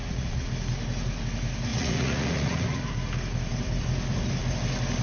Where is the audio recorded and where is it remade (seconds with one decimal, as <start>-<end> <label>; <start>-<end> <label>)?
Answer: 0.0-0.5 remade; 0.5-1.7 recorded; 1.7-2.8 remade; 2.8-5.0 recorded